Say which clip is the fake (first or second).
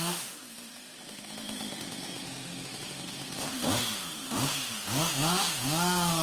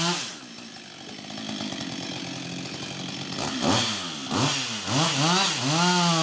first